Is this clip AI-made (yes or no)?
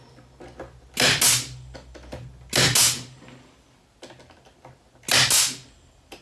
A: no